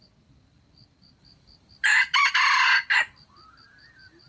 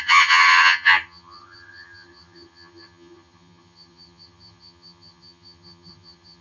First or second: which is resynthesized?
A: second